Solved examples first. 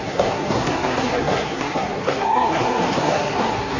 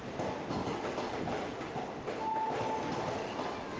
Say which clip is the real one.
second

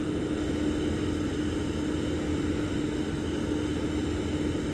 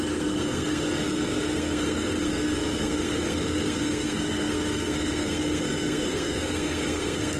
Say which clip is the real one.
first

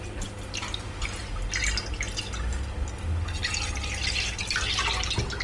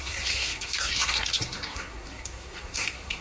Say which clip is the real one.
first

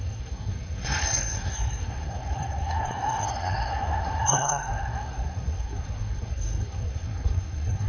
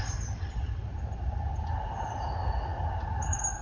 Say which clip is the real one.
second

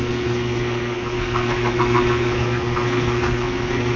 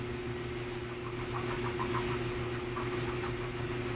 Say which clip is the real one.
second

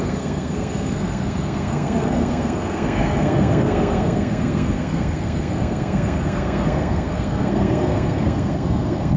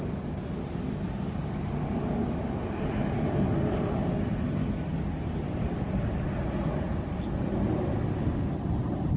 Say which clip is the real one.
second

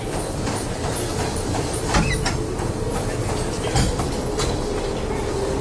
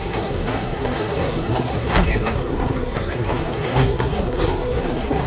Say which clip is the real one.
first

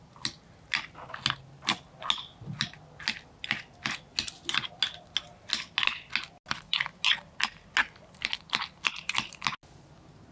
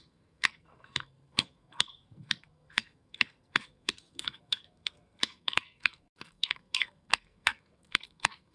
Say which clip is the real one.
first